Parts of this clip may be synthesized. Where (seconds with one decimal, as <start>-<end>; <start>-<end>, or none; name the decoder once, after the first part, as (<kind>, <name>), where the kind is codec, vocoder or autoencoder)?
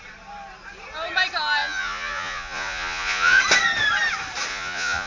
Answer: 1.6-3.4 (vocoder, Vocos); 4.5-5.1